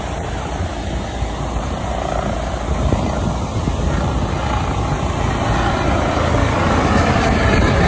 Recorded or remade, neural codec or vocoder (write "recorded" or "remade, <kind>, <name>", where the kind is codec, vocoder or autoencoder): recorded